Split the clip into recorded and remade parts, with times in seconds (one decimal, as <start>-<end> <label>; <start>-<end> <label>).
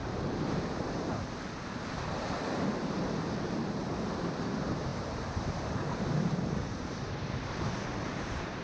0.0-1.1 remade; 1.1-2.8 recorded; 2.8-3.9 remade; 3.9-4.9 recorded; 4.9-8.6 remade